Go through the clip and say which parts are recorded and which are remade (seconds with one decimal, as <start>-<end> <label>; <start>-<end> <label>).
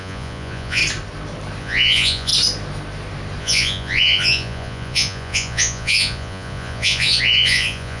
0.0-0.8 remade; 0.8-1.6 recorded; 1.6-2.3 remade; 2.3-3.4 recorded; 3.4-8.0 remade